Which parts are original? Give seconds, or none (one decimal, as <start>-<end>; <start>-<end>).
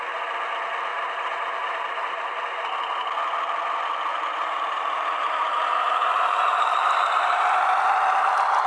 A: 0.0-0.9; 2.3-4.1; 7.6-8.7